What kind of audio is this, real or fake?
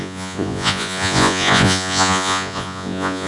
fake